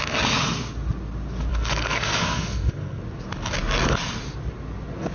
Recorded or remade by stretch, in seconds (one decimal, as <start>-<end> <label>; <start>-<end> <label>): 0.0-1.5 recorded; 1.5-3.0 remade; 3.0-5.1 recorded